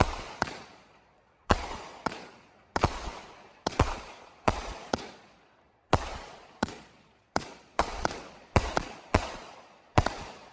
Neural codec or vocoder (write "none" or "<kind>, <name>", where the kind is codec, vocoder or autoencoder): vocoder, Vocos